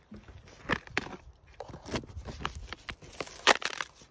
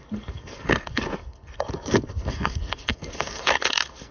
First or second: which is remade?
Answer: second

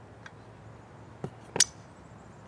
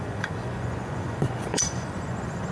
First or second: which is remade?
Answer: second